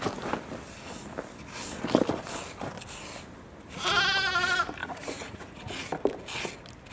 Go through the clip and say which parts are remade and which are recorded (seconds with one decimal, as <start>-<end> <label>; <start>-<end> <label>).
0.0-4.8 recorded; 4.8-5.9 remade; 5.9-6.9 recorded